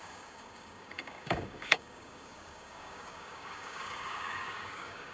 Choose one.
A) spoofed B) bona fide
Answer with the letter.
A